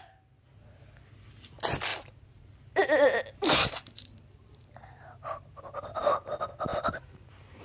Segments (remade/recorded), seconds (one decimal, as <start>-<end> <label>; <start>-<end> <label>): 0.0-1.9 recorded; 1.9-6.0 remade; 6.0-6.7 recorded; 6.7-7.6 remade